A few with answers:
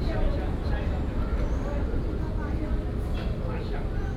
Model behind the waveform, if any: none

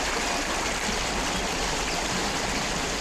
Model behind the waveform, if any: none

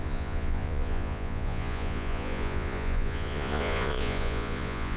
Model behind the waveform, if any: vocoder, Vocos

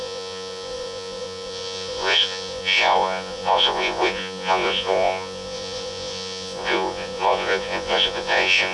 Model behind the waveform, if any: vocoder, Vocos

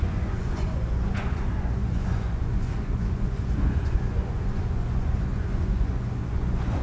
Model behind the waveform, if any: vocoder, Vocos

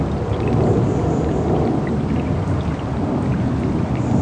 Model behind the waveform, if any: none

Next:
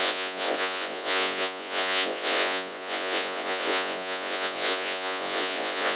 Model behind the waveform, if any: vocoder, Vocos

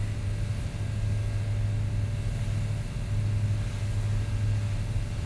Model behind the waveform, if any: none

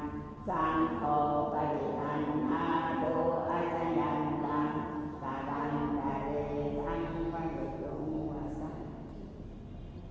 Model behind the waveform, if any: none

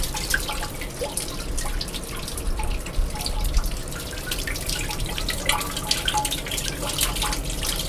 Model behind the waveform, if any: none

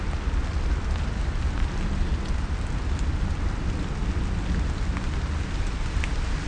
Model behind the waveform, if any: none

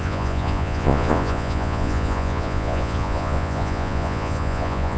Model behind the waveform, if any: vocoder, Vocos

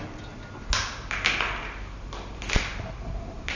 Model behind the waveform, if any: none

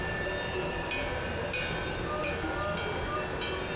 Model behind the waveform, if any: none